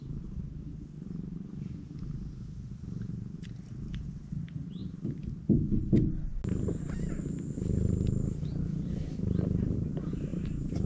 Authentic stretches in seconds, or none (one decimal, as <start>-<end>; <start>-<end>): 0.0-10.3

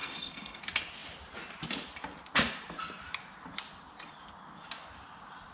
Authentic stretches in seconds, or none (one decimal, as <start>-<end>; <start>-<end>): 0.6-5.5